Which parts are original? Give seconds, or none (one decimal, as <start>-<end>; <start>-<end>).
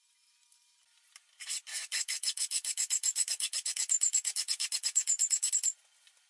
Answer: 0.0-1.7; 5.5-6.3